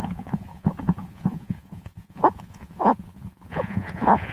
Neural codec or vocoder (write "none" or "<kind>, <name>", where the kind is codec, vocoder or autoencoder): vocoder, Vocos